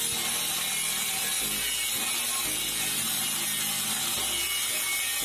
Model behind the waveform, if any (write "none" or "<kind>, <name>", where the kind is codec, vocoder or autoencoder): none